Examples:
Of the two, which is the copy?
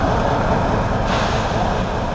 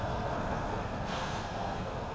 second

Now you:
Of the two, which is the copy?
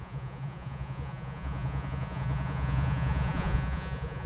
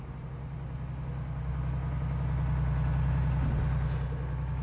first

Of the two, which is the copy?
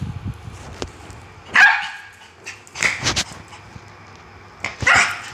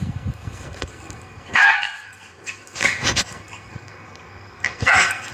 second